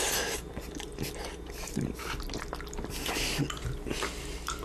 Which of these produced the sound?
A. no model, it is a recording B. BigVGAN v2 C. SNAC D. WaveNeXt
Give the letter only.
A